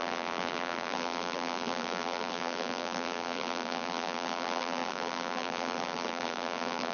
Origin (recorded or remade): remade